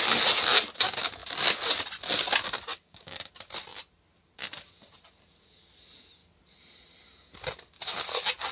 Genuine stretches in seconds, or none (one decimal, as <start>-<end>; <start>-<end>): 0.0-2.7; 3.3-8.5